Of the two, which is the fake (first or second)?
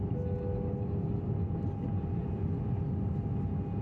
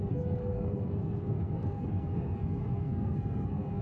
second